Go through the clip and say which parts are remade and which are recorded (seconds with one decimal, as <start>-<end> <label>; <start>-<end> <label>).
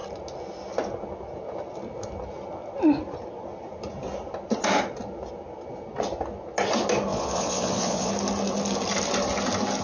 0.0-7.1 recorded; 7.1-8.1 remade; 8.1-9.8 recorded